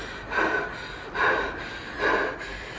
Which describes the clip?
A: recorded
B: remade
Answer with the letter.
B